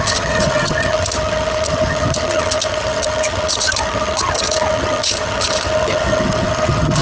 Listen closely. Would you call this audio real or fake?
fake